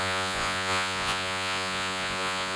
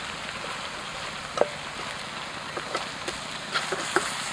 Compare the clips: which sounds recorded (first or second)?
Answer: second